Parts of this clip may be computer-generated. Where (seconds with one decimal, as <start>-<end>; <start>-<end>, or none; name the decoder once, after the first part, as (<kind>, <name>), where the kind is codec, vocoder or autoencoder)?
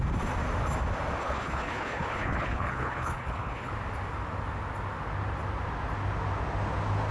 1.2-3.7 (codec, HILCodec)